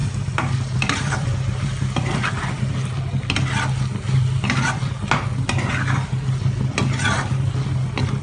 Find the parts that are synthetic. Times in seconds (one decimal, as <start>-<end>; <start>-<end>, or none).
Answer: 0.0-2.2